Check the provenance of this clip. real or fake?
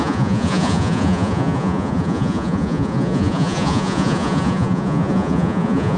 fake